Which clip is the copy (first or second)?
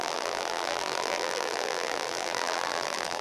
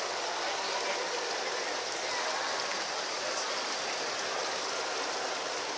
first